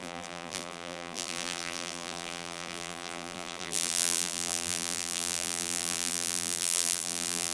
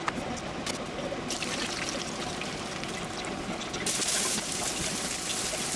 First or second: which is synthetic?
first